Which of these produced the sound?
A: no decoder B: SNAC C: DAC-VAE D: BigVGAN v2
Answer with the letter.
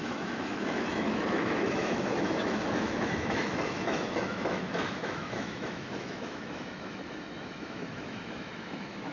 C